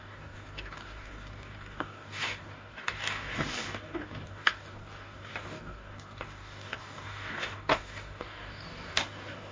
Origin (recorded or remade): remade